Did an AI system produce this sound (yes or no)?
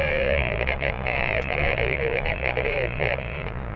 yes